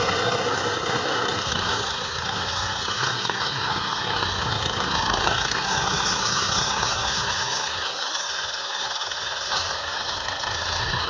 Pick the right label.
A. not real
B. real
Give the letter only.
A